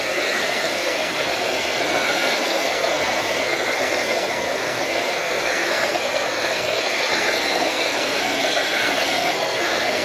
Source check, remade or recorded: remade